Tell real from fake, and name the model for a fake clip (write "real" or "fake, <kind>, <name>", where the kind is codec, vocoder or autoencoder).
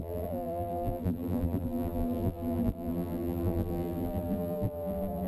fake, vocoder, BigVGAN v2